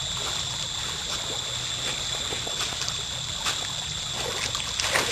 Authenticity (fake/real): real